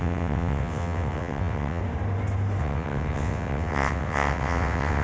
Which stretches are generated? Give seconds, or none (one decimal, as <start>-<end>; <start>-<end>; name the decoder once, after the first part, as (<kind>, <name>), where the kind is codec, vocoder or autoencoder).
0.0-1.8 (vocoder, WaveNeXt); 2.6-5.0